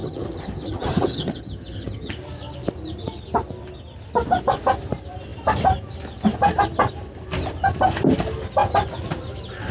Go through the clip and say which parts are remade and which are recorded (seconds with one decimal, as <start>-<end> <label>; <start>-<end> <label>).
0.0-2.1 remade; 2.1-9.7 recorded